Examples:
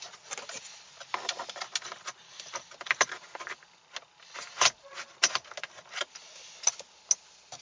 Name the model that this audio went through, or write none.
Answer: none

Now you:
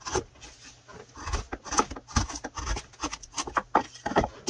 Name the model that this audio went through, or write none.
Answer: none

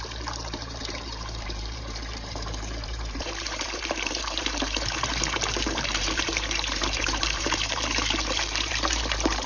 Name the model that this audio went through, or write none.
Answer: vocoder, BigVGAN v2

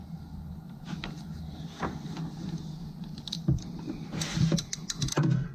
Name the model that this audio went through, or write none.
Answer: none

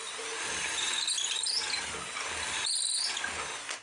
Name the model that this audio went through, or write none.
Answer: none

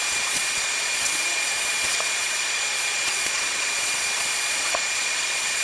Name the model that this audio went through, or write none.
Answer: vocoder, Vocos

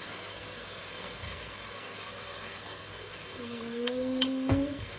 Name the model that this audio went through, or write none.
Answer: codec, SNAC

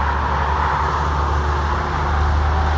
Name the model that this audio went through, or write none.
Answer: none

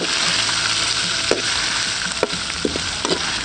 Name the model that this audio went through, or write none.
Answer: none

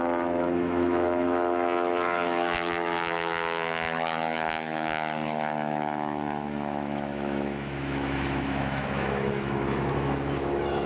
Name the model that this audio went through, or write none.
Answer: autoencoder, DAC-VAE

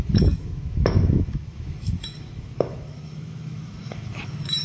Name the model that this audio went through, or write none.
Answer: autoencoder, DAC-VAE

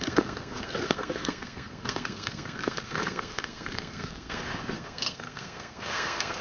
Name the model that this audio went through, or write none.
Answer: codec, SNAC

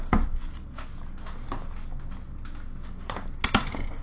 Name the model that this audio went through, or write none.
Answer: none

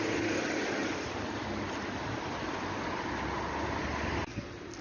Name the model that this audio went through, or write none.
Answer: none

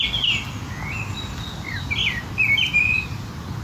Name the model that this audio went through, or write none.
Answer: none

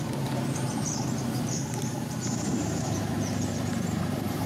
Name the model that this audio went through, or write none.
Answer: vocoder, BigVGAN v2